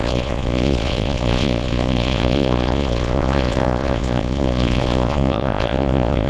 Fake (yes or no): yes